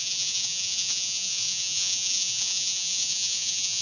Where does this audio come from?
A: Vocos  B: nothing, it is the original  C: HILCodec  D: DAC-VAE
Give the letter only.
A